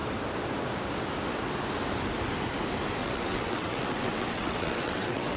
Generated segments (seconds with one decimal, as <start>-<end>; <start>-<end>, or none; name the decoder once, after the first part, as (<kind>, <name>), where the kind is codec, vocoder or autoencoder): 3.0-5.4 (vocoder, WaveNeXt)